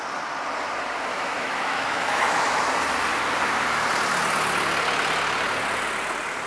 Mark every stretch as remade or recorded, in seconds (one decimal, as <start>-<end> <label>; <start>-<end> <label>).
0.0-1.1 recorded; 1.1-2.6 remade; 2.6-6.5 recorded